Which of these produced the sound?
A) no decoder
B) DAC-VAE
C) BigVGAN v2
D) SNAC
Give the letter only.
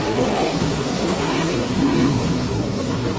D